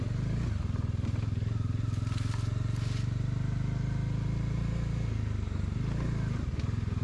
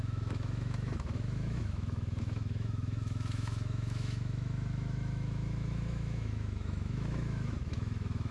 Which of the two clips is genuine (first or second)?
first